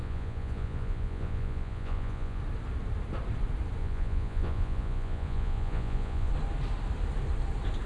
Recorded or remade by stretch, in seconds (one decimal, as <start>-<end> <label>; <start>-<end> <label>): 0.0-2.4 remade; 2.4-3.8 recorded; 3.8-6.3 remade; 6.3-7.9 recorded